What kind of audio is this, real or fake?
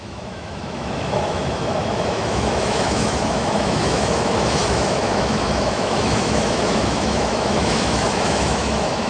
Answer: fake